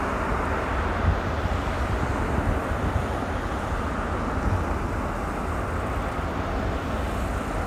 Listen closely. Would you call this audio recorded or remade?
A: recorded